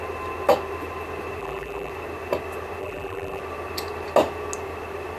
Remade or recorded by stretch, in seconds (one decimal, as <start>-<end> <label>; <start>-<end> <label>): 0.0-1.4 recorded; 1.4-1.9 remade; 1.9-2.8 recorded; 2.8-3.4 remade; 3.4-5.2 recorded